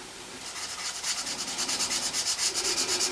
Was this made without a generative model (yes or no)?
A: yes